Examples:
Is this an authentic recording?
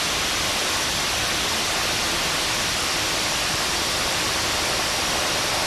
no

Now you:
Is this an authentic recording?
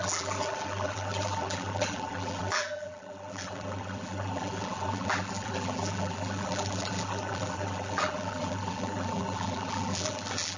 no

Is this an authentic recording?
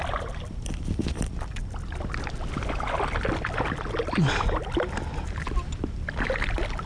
yes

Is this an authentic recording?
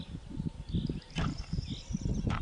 yes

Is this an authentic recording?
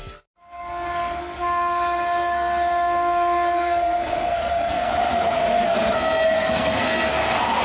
no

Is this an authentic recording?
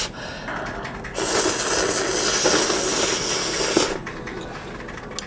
yes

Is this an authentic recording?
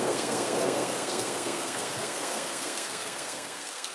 no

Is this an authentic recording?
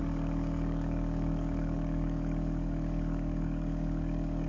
no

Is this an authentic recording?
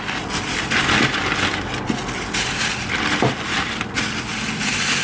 yes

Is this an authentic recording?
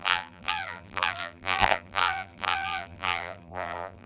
no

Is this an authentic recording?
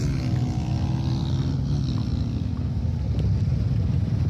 yes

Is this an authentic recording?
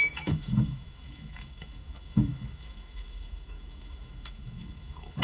no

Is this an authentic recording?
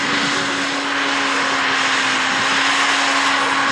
yes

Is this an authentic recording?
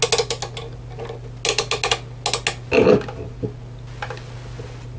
yes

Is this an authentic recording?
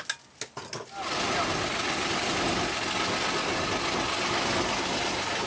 yes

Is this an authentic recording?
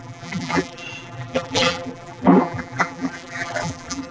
no